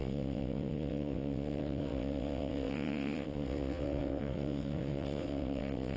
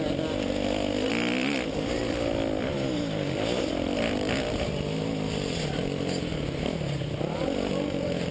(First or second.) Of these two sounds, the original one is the second